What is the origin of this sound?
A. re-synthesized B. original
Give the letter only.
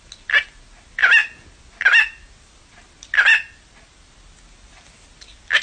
B